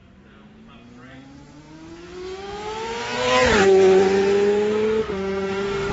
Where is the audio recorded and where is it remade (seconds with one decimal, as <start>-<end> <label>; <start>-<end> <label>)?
0.0-5.0 recorded; 5.0-5.9 remade